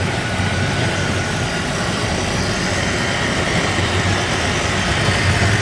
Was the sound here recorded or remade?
recorded